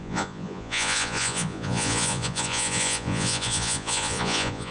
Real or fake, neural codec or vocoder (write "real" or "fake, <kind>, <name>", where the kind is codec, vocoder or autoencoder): fake, vocoder, Vocos